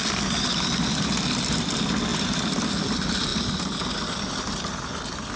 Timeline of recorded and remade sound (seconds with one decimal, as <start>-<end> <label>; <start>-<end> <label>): 0.0-5.4 recorded